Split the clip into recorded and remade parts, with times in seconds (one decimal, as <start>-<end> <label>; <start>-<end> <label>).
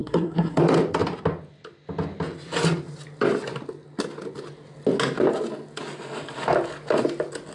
0.0-0.6 remade; 0.6-7.5 recorded